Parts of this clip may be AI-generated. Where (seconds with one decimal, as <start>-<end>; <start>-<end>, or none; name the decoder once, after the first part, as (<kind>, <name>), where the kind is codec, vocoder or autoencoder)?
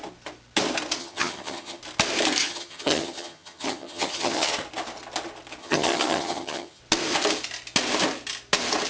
1.0-1.8 (vocoder, HiFi-GAN); 2.4-4.5; 5.6-6.8